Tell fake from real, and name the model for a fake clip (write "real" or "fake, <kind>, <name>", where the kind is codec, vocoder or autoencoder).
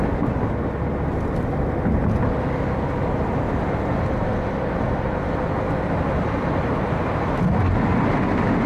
real